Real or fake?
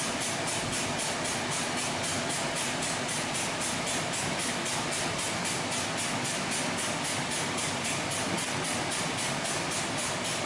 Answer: real